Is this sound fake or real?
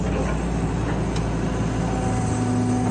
real